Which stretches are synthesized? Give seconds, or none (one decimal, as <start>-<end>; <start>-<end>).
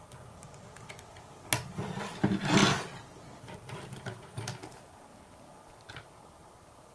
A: none